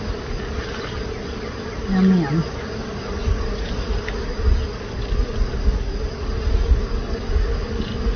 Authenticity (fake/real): real